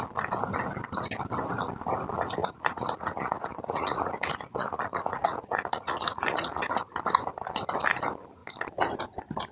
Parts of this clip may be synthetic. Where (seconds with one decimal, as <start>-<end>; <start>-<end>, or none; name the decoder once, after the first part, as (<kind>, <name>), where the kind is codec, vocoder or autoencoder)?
2.4-6.8 (vocoder, Vocos)